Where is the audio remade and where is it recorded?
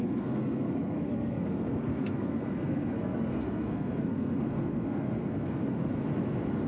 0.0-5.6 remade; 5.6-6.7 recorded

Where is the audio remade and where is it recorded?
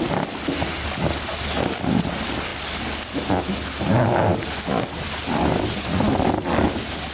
0.0-7.1 recorded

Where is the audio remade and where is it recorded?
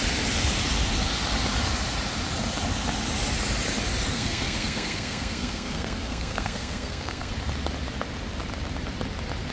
0.0-4.1 recorded; 4.1-7.3 remade; 7.3-9.5 recorded